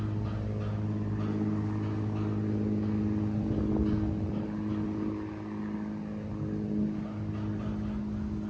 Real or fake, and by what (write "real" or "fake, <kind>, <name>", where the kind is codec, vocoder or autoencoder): real